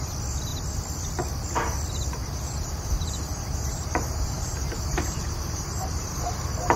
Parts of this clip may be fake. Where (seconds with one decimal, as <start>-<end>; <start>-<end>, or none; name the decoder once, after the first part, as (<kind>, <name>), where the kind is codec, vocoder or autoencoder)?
2.2-6.3 (vocoder, BigVGAN v2)